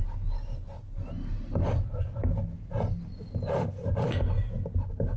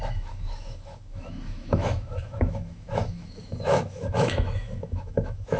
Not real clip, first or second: second